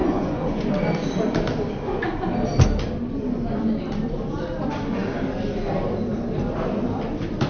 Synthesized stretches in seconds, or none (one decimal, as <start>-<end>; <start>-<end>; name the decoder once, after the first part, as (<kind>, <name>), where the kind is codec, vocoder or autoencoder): 0.0-0.7 (vocoder, Vocos)